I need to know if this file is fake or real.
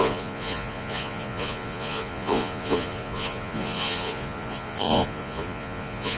fake